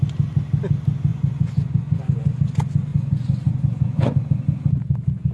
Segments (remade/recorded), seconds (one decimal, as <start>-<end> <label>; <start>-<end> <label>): 0.0-1.1 recorded; 1.1-2.4 remade; 2.4-2.9 recorded; 2.9-4.2 remade; 4.2-5.3 recorded